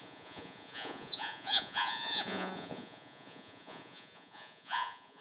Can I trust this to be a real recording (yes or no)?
no